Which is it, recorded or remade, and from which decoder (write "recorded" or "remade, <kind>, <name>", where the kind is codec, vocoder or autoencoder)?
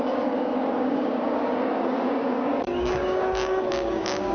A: remade, codec, DAC